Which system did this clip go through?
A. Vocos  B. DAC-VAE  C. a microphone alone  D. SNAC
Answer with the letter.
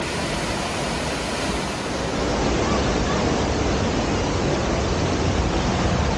C